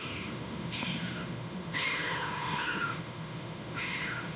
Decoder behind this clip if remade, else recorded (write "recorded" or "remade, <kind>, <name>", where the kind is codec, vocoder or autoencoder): remade, autoencoder, DAC-VAE